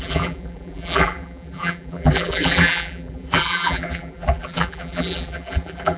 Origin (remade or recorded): remade